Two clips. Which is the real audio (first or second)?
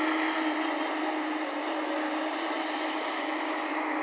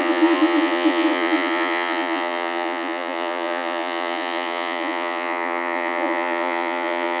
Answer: first